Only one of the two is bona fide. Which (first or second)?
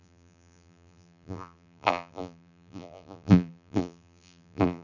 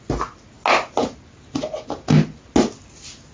second